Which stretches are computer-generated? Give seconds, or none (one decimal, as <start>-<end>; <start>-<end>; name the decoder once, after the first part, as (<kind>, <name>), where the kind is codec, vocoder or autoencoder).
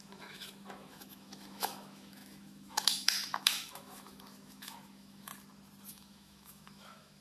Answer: 0.0-5.3 (autoencoder, DAC-VAE); 5.9-7.2